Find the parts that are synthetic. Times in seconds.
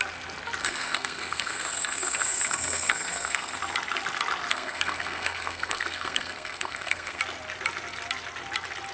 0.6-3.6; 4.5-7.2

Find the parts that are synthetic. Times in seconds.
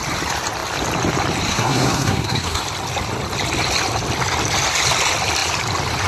1.5-2.6